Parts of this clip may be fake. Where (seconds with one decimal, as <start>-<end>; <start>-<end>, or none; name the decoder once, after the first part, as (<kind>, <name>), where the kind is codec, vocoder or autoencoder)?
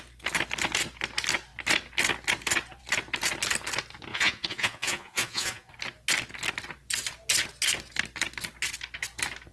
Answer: 4.1-5.7 (vocoder, Vocos)